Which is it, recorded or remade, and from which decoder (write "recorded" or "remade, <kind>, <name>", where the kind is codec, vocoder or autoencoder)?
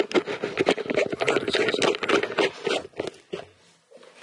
recorded